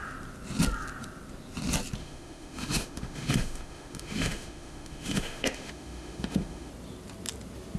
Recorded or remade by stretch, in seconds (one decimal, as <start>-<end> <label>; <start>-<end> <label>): 0.0-2.0 recorded; 2.0-6.7 remade; 6.7-7.8 recorded